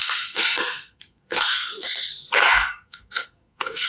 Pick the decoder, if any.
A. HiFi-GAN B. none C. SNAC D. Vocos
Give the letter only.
C